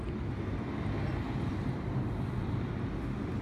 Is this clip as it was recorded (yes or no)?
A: yes